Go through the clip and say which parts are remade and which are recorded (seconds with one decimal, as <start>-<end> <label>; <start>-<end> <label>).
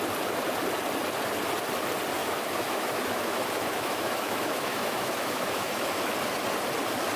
0.0-2.2 recorded; 2.2-6.1 remade; 6.1-7.2 recorded